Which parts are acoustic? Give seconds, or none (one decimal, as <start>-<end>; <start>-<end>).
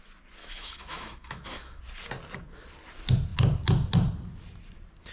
0.0-0.4; 1.8-5.1